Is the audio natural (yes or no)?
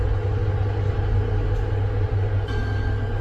yes